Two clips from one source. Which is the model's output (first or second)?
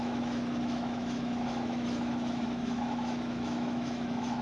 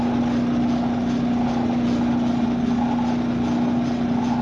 first